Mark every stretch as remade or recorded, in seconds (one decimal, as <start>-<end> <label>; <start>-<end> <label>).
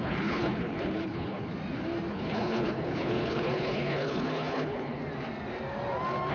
0.0-1.5 remade; 1.5-2.1 recorded; 2.1-5.0 remade; 5.0-6.3 recorded